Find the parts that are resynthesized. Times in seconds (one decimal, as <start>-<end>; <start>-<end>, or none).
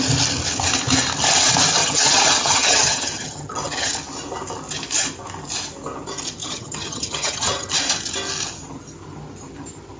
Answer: 1.8-3.9; 6.4-7.7